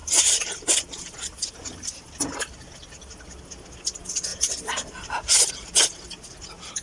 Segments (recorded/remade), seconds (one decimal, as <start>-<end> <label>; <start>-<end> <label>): 0.0-2.0 remade; 2.0-4.3 recorded; 4.3-5.5 remade; 5.5-6.8 recorded